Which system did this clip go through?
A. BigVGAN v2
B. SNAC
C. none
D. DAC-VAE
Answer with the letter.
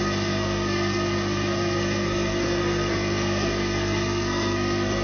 B